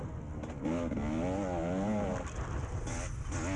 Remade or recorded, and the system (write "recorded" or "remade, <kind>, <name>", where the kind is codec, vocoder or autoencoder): recorded